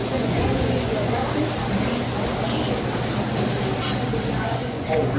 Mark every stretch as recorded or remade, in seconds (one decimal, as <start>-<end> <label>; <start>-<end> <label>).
0.0-1.2 remade; 1.2-4.3 recorded; 4.3-5.2 remade